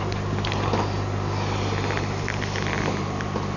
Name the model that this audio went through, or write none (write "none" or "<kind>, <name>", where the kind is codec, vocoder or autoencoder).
none